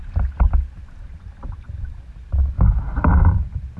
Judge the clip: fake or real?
real